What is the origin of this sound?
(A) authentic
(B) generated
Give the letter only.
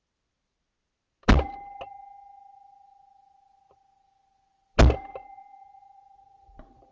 A